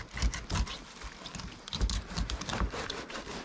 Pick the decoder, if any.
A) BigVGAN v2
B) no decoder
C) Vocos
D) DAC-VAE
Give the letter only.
B